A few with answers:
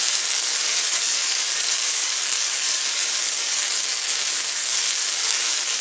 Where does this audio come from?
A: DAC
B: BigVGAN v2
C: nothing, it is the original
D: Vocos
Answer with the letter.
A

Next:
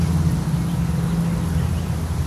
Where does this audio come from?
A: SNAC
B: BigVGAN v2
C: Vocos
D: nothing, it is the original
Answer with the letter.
D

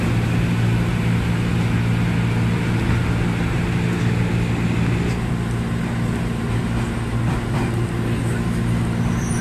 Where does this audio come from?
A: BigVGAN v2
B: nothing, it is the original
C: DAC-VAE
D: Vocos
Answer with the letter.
B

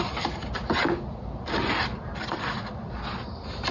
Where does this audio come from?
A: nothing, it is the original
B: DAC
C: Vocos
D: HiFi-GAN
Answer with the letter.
A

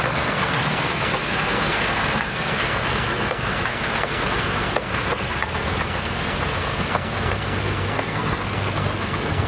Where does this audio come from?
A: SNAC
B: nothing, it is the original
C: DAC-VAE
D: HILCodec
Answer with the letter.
A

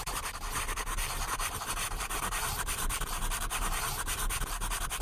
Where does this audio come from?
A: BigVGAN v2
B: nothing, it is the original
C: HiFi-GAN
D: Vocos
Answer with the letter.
A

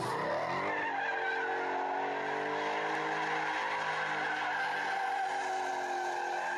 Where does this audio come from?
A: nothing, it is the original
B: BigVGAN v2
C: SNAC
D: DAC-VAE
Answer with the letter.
A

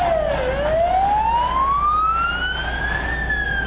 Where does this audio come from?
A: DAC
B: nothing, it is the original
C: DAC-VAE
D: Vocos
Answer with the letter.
B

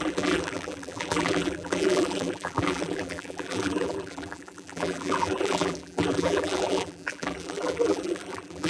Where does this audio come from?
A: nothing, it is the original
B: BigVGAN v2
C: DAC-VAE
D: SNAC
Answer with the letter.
B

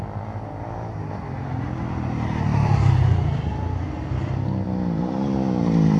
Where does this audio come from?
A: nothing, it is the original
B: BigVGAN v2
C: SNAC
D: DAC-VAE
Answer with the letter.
A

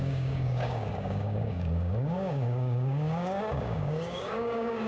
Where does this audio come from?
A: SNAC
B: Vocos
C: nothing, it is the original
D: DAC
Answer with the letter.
D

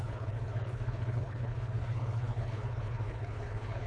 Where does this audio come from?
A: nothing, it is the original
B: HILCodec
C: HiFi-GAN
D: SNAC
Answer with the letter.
B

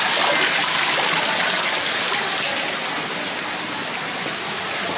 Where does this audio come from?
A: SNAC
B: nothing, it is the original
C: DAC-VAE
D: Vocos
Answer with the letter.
B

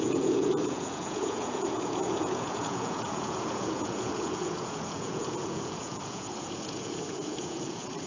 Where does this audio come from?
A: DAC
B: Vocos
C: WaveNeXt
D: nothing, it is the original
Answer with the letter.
B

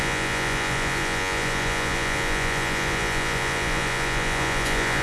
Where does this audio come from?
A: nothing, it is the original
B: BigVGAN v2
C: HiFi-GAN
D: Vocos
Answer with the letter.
D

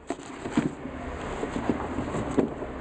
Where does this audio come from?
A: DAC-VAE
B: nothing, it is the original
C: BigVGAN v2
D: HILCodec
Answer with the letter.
B